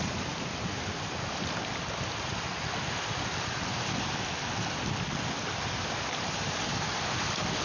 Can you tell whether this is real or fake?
real